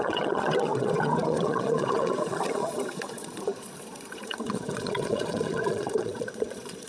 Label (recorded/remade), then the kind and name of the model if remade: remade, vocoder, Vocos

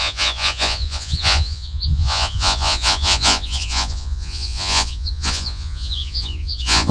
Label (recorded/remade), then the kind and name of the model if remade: remade, vocoder, Vocos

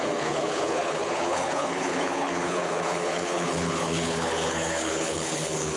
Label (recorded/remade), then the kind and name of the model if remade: remade, codec, HILCodec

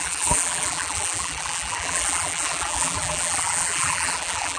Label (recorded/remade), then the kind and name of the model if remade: remade, vocoder, BigVGAN v2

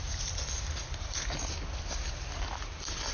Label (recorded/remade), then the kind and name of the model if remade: recorded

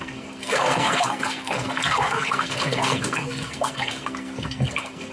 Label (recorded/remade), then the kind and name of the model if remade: remade, codec, SNAC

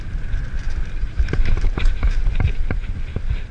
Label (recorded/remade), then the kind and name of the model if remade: recorded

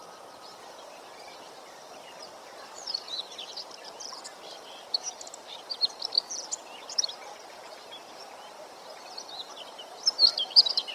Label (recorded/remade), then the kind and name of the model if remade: recorded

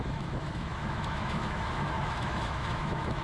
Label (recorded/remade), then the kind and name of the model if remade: remade, autoencoder, DAC-VAE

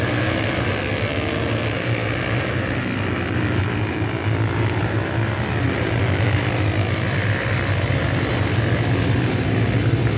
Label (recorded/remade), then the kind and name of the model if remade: recorded